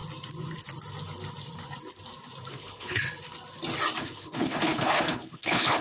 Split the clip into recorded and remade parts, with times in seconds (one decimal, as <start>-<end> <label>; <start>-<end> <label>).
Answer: 0.0-2.5 recorded; 2.5-3.0 remade; 3.0-4.0 recorded; 4.0-5.8 remade

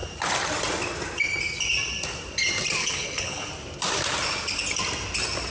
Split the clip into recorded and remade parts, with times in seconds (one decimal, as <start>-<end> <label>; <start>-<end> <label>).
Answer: 0.0-2.8 recorded; 2.8-3.5 remade; 3.5-5.5 recorded

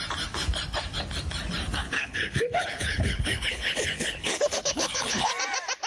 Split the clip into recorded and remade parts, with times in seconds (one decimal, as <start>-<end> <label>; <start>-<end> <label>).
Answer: 0.0-1.8 recorded; 1.8-5.3 remade; 5.3-5.9 recorded

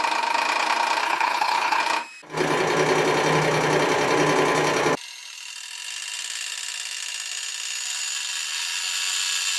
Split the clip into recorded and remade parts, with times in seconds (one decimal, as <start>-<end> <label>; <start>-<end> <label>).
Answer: 0.0-1.0 recorded; 1.0-1.8 remade; 1.8-9.6 recorded

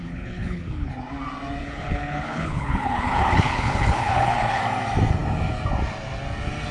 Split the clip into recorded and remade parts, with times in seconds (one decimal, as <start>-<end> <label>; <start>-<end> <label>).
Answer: 0.0-0.9 remade; 0.9-1.6 recorded; 1.6-4.6 remade; 4.6-6.7 recorded

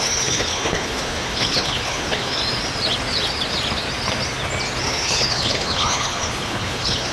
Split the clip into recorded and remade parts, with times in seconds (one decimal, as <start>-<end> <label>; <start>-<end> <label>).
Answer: 0.0-2.4 remade; 2.4-4.8 recorded; 4.8-7.1 remade

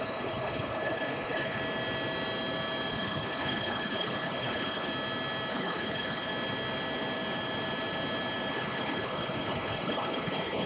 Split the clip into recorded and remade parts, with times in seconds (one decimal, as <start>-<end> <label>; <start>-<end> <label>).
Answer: 0.0-1.6 remade; 1.6-2.9 recorded; 2.9-4.9 remade; 4.9-5.5 recorded; 5.5-6.3 remade; 6.3-8.5 recorded; 8.5-10.7 remade